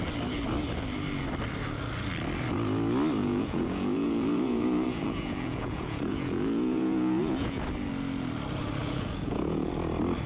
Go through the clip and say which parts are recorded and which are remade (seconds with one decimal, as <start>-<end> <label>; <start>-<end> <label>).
0.0-3.2 recorded; 3.2-7.6 remade; 7.6-8.8 recorded; 8.8-9.7 remade; 9.7-10.3 recorded